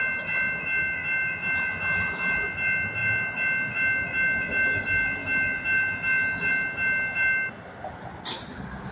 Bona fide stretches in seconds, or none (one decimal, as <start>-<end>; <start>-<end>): 0.0-8.9